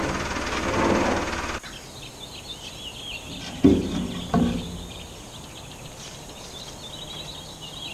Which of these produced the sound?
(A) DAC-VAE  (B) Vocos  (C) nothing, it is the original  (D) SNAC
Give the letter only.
C